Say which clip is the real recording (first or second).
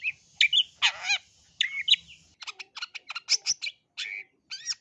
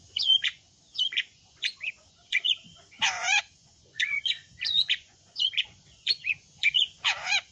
first